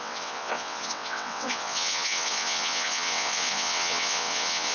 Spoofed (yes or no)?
yes